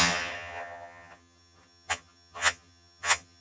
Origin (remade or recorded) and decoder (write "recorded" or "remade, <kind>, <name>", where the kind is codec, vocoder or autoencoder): remade, vocoder, HiFi-GAN